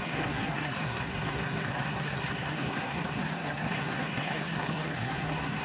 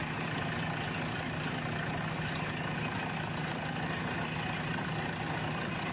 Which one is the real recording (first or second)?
second